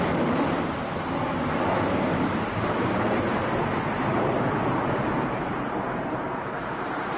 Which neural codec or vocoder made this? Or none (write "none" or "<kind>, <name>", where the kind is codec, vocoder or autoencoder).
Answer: vocoder, BigVGAN v2